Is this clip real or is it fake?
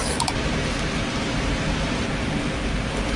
real